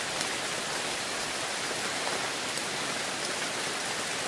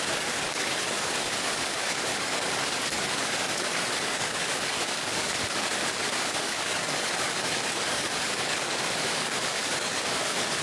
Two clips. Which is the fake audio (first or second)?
second